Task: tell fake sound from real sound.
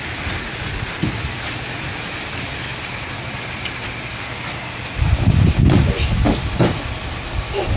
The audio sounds real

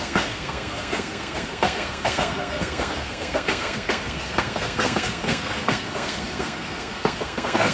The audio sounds fake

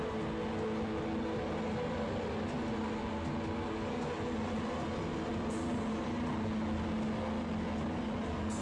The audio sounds real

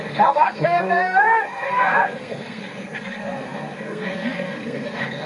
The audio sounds fake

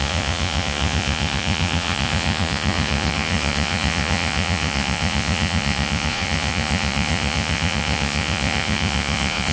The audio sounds fake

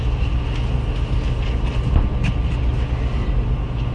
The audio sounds real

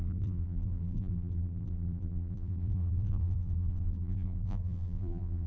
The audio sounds fake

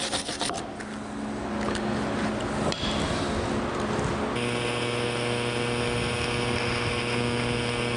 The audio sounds real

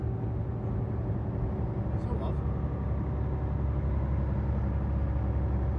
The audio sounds real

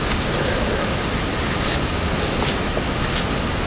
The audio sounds real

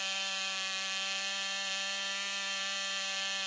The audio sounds fake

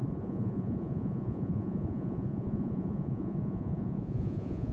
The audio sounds fake